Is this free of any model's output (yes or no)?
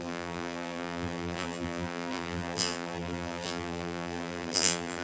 no